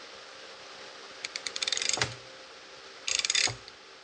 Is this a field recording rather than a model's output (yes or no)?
yes